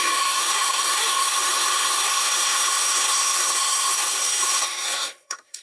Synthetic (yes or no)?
yes